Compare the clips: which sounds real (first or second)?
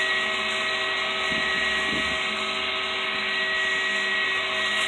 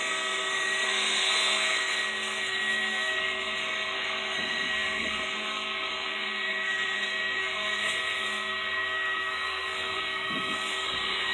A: first